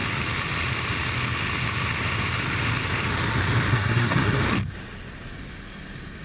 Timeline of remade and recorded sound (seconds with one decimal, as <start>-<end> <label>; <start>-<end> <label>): 0.0-3.7 recorded; 3.7-4.4 remade; 4.4-6.2 recorded